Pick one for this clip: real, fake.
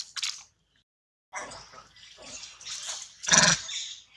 real